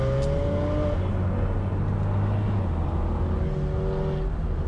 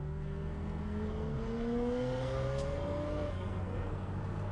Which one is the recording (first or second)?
first